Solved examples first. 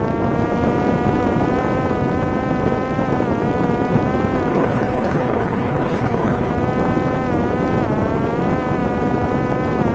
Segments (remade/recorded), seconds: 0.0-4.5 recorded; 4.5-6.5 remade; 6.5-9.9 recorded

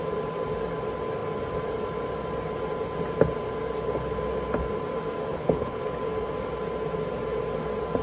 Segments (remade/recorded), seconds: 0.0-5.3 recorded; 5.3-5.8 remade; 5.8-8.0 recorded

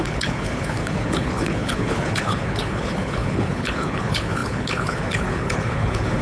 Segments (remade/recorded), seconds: 0.0-6.2 remade

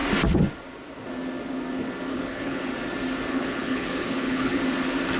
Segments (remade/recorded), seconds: 0.0-2.1 recorded; 2.1-2.7 remade; 2.7-3.3 recorded; 3.3-4.6 remade; 4.6-5.2 recorded